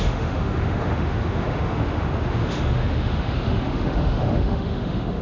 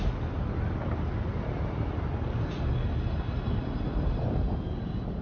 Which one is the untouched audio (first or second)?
second